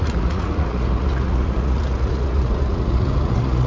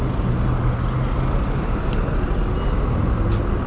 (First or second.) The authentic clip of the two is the second